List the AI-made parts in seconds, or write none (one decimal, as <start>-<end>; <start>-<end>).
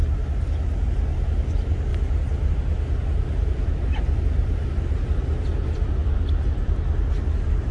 none